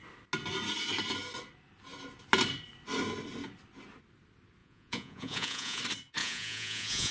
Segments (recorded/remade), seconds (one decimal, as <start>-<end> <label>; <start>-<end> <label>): 0.0-4.6 recorded; 4.6-5.8 remade; 5.8-6.2 recorded; 6.2-7.1 remade